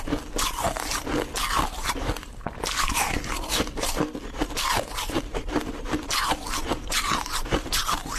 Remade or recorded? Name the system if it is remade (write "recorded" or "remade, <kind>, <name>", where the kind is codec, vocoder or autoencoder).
recorded